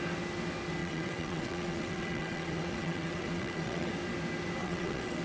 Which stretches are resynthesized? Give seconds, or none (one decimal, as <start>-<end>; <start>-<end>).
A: 0.8-3.9; 4.6-5.2